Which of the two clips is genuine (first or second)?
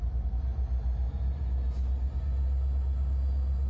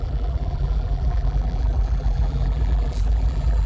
first